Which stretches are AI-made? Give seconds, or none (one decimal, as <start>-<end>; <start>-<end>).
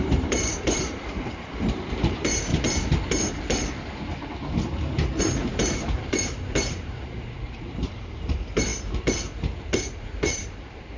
0.0-2.5; 5.2-8.7; 10.0-11.0